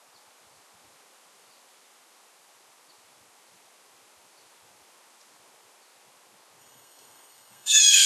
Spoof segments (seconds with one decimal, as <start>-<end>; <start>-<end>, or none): 6.6-8.1